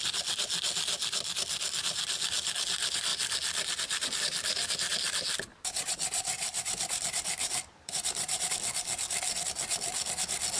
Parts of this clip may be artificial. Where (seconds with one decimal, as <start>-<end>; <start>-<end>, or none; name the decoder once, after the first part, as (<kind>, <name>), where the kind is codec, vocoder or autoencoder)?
5.5-8.5 (vocoder, BigVGAN v2)